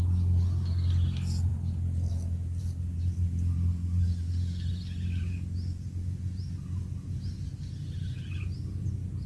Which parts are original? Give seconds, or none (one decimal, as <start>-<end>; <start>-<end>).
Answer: 0.0-9.3